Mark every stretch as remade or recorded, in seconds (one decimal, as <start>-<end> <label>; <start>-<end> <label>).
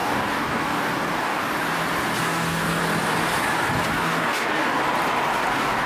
0.0-1.4 remade; 1.4-2.2 recorded; 2.2-2.8 remade; 2.8-3.9 recorded; 3.9-4.8 remade; 4.8-5.5 recorded; 5.5-5.9 remade